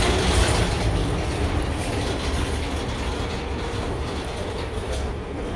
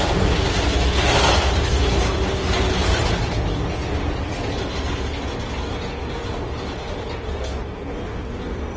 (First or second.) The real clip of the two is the second